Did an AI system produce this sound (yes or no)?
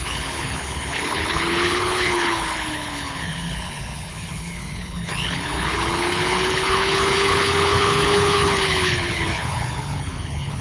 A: yes